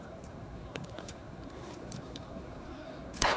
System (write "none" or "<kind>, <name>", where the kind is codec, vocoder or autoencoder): codec, SNAC